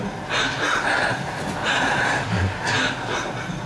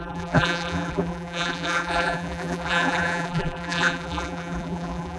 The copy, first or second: second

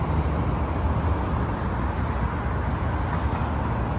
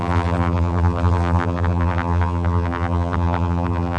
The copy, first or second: second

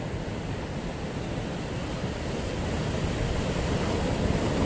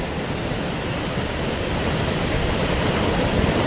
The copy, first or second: second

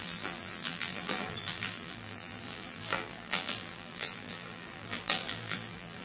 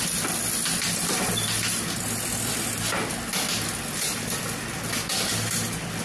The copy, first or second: first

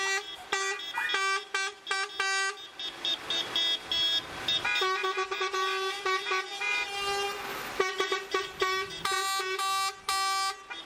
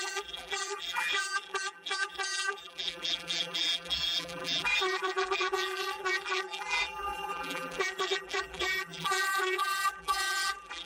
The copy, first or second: second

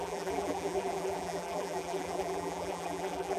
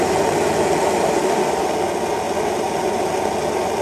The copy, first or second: first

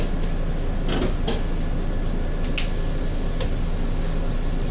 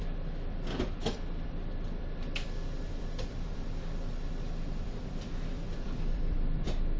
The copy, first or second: second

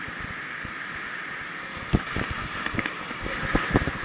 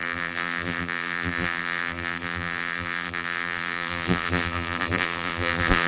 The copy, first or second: second